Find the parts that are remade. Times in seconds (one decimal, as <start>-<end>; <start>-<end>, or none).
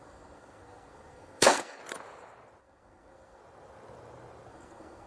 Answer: 0.0-1.8; 2.6-3.4; 4.5-5.1